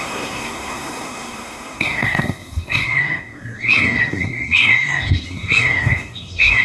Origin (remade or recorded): remade